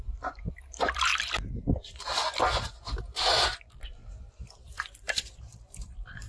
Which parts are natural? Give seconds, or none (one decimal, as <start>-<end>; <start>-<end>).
1.1-4.3